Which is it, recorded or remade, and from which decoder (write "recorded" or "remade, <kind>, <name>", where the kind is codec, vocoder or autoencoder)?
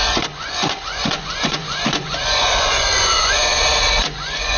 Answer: remade, vocoder, Vocos